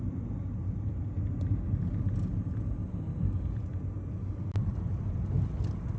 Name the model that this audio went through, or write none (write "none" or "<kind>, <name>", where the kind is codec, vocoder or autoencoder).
none